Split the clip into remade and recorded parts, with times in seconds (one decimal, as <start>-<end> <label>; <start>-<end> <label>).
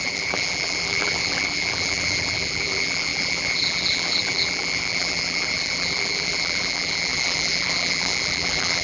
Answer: 0.0-8.8 remade